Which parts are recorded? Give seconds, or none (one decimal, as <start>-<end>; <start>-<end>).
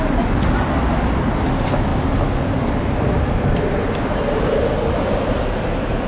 0.0-6.1